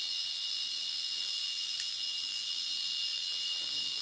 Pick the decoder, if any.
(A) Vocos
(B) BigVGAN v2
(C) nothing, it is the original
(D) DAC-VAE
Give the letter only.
B